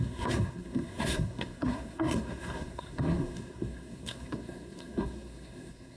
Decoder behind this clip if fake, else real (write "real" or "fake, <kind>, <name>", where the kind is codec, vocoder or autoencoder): fake, codec, SNAC